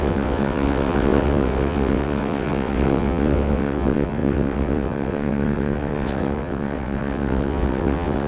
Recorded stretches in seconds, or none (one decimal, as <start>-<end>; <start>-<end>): none